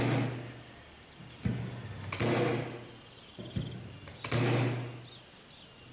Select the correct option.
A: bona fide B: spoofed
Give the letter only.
A